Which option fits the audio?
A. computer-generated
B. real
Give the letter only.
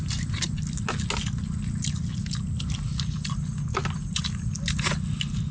B